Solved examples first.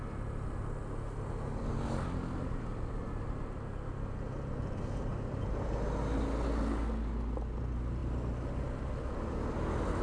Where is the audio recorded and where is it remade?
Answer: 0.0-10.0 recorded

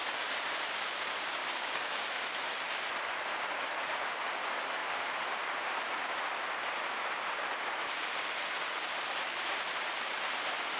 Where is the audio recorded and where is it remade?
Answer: 0.0-1.4 recorded; 1.4-2.0 remade; 2.0-10.8 recorded